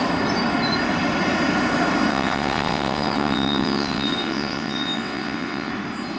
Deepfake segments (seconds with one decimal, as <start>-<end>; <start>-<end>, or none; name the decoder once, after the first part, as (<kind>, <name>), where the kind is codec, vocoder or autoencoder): 2.1-5.7 (vocoder, WaveNeXt)